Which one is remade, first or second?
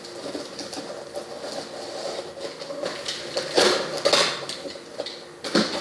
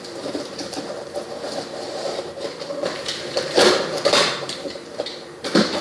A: second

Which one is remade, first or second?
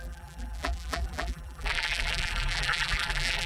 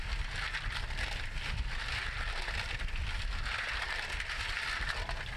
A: first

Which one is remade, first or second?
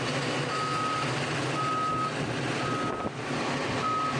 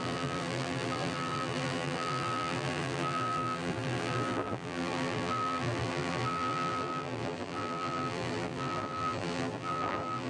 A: second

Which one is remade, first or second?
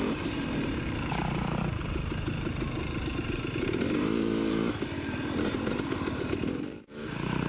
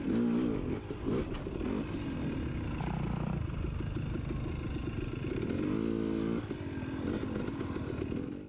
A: first